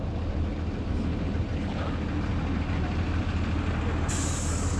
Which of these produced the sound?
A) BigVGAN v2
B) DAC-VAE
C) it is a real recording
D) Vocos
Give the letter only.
C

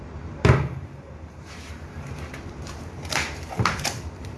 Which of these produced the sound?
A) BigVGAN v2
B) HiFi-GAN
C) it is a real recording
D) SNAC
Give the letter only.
A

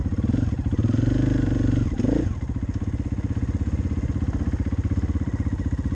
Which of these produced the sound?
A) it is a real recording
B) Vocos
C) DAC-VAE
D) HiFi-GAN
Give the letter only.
A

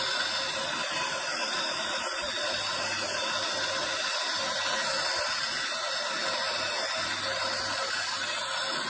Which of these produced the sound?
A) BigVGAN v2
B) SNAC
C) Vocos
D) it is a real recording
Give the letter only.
D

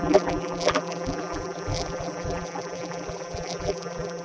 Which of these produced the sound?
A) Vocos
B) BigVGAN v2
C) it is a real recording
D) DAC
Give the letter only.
B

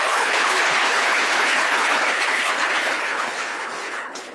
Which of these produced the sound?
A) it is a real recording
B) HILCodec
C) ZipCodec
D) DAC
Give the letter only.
B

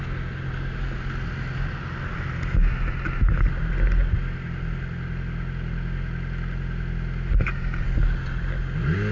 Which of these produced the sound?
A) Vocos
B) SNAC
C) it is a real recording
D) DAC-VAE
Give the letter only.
C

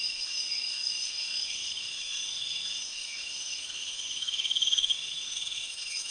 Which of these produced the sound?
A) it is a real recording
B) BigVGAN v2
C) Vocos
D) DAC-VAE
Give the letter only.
D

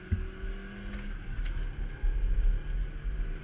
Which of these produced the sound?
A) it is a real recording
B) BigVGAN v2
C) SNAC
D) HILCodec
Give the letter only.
A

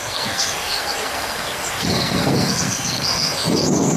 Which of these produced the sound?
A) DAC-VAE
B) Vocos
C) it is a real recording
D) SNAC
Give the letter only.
D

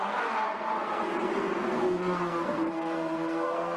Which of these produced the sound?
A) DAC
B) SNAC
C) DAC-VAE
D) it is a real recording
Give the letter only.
B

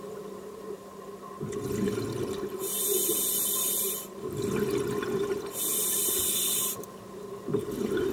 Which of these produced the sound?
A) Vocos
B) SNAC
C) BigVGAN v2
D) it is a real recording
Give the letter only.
D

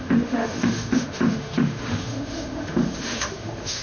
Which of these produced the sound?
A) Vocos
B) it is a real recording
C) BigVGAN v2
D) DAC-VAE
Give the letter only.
D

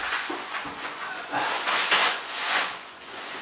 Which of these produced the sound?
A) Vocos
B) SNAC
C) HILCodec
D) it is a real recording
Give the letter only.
A